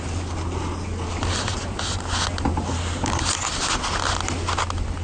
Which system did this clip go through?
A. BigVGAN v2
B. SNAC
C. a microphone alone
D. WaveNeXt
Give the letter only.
C